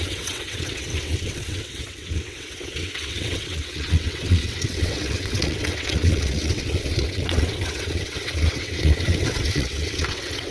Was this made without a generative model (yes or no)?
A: no